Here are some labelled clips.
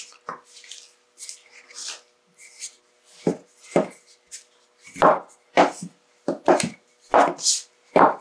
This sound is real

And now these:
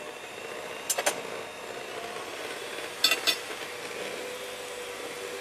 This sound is real